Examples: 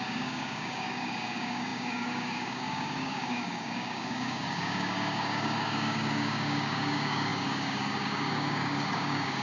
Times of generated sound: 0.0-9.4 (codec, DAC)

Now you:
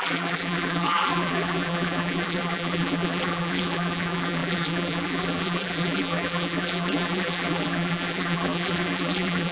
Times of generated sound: 0.0-9.5 (vocoder, BigVGAN v2)

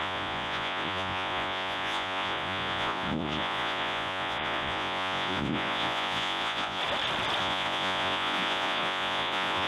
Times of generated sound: 0.0-6.8 (vocoder, Vocos); 7.4-9.7

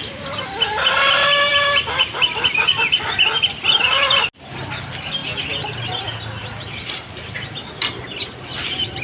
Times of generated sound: none

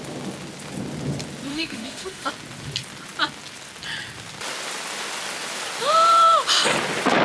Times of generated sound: 1.5-2.3 (autoencoder, DAC-VAE)